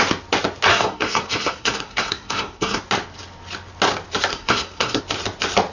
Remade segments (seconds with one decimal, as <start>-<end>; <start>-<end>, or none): 0.7-2.8; 4.3-5.0